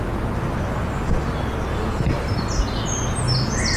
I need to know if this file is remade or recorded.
recorded